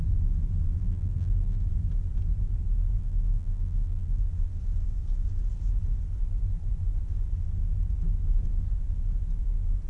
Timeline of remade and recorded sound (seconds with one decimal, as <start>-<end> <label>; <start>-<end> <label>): 0.0-0.8 recorded; 0.8-1.6 remade; 1.6-3.0 recorded; 3.0-4.2 remade; 4.2-9.9 recorded